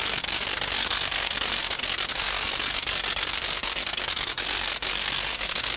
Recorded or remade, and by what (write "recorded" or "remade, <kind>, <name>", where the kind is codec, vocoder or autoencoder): remade, codec, SNAC